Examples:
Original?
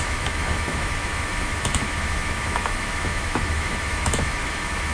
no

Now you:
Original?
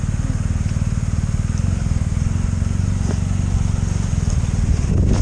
yes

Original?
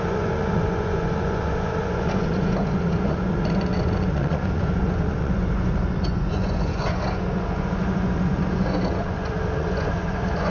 no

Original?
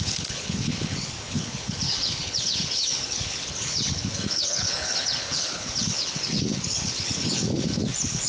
no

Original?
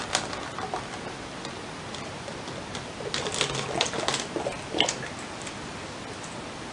yes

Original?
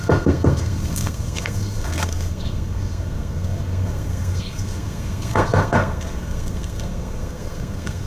no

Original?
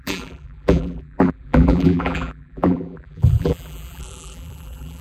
no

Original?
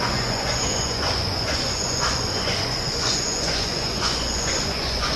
no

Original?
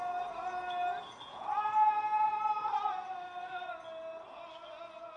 yes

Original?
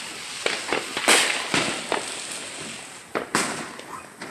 yes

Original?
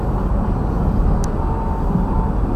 yes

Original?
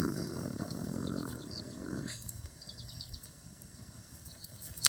no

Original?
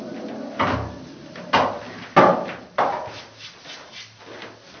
yes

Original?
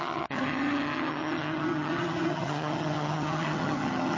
no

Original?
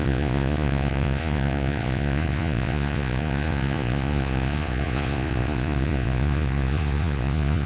no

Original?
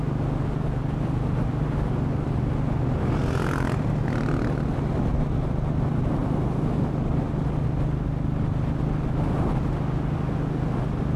yes